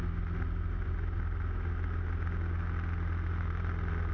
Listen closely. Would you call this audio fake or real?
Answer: real